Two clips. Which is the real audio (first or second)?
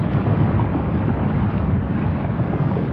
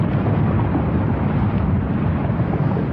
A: second